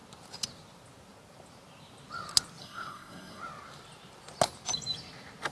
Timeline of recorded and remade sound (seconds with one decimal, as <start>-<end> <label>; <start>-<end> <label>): 0.0-2.6 recorded; 2.6-3.4 remade; 3.4-5.5 recorded